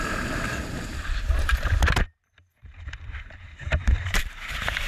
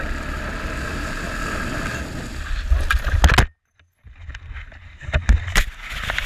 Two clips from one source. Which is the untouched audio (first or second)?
second